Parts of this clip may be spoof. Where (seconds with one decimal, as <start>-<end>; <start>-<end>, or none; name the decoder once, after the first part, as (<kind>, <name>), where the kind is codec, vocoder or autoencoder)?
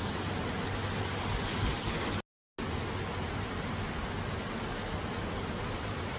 none